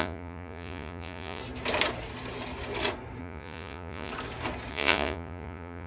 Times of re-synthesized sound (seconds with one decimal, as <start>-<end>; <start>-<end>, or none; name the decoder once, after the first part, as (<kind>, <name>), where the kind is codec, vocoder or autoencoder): 0.0-1.4 (vocoder, Vocos); 3.2-4.1; 4.7-5.9